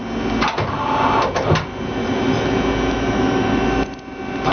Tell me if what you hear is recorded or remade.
recorded